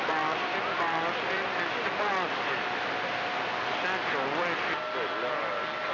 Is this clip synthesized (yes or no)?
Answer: no